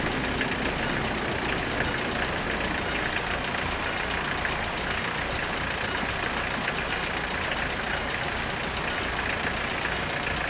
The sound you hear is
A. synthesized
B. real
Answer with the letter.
B